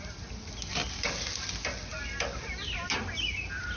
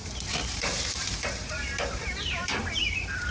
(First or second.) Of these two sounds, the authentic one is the first